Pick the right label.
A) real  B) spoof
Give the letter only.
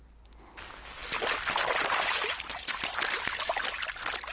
A